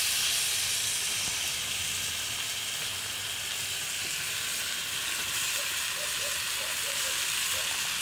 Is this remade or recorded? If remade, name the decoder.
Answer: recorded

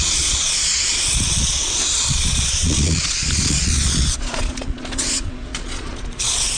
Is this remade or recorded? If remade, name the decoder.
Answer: remade, vocoder, Vocos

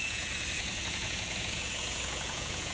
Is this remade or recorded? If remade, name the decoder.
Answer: remade, vocoder, Vocos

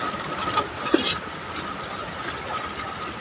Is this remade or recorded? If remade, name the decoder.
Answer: recorded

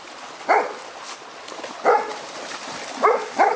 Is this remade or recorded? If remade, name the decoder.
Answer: recorded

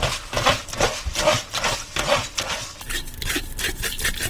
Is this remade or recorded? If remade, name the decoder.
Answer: recorded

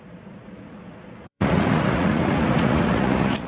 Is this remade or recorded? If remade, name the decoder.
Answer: remade, vocoder, Vocos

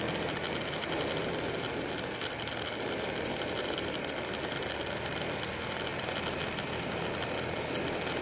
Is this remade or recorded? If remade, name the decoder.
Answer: recorded